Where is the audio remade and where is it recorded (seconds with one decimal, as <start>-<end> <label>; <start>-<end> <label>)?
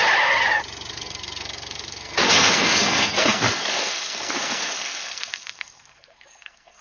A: 0.0-0.9 recorded; 0.9-6.8 remade